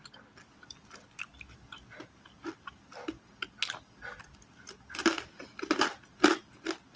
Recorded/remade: recorded